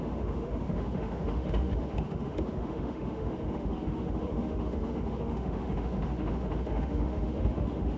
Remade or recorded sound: remade